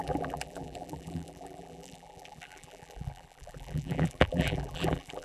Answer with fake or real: fake